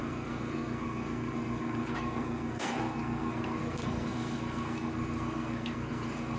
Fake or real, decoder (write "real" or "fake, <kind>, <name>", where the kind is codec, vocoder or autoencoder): fake, codec, SNAC